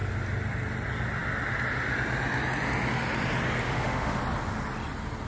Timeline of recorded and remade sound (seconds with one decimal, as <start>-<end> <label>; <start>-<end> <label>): 0.0-3.6 recorded; 3.6-4.2 remade; 4.2-5.3 recorded